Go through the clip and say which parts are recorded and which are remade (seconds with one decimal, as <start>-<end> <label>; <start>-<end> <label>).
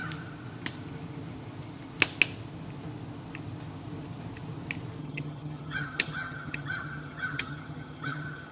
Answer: 0.0-5.0 recorded; 5.0-8.5 remade